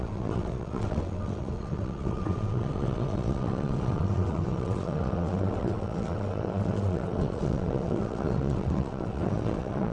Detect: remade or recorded remade